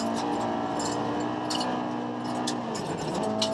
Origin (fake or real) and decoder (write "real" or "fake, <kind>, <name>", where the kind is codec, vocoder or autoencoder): real